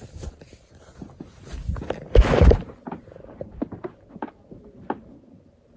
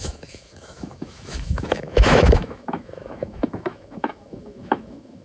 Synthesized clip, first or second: second